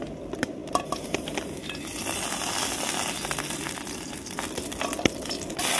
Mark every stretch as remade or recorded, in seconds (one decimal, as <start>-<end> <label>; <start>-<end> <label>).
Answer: 0.0-5.8 recorded